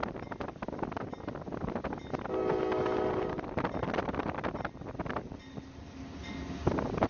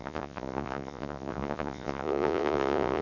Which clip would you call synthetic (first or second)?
second